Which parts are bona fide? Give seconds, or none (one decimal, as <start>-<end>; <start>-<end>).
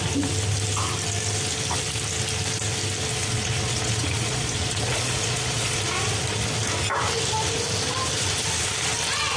0.0-3.1; 5.8-9.4